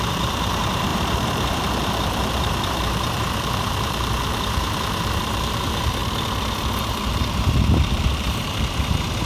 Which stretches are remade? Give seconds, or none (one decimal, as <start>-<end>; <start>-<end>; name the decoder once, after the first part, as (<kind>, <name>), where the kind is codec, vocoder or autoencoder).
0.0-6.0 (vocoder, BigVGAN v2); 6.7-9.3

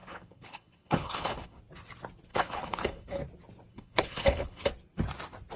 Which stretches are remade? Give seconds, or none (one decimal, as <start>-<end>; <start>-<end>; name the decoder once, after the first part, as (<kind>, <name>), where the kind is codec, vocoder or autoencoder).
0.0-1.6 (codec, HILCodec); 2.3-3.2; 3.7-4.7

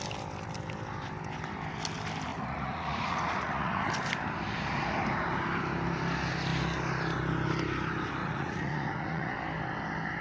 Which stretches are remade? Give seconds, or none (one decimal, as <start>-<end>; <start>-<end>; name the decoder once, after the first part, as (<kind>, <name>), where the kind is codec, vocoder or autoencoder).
2.3-3.9 (vocoder, Vocos); 8.2-9.3

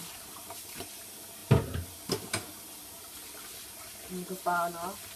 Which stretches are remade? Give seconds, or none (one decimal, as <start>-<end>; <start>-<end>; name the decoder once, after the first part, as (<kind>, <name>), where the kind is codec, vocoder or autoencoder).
none